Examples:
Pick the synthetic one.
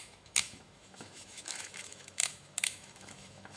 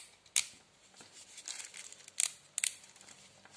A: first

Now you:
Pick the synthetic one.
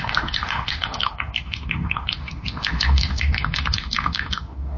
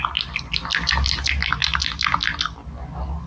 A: first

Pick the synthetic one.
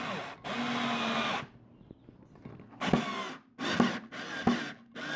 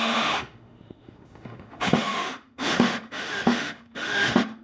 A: second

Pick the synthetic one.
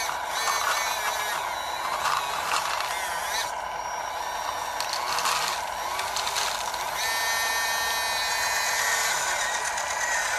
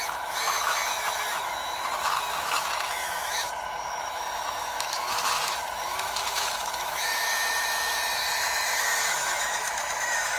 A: second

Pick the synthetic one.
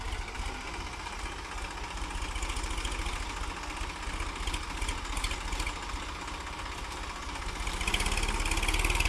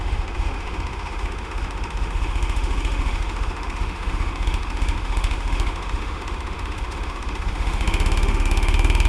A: second